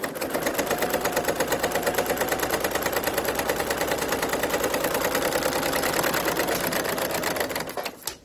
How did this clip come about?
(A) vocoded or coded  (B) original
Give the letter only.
B